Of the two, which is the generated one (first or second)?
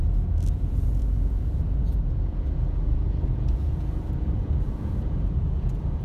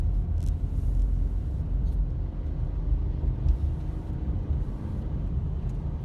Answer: first